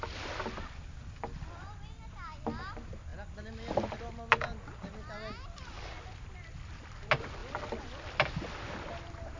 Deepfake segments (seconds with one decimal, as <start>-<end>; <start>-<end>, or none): none